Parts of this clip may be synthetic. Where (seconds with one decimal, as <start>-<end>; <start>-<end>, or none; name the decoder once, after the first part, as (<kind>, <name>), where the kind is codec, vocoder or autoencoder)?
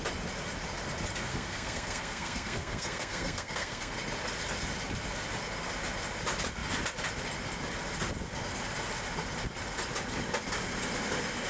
1.3-3.9 (codec, SNAC)